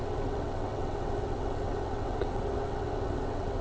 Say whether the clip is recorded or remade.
remade